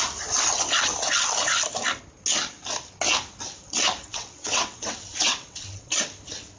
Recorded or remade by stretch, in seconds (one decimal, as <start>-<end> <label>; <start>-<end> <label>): 0.0-4.0 recorded; 4.0-5.9 remade; 5.9-6.6 recorded